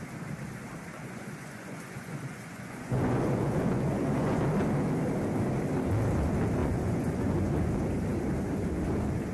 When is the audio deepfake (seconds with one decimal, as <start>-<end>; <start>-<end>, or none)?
1.0-4.4; 6.6-7.7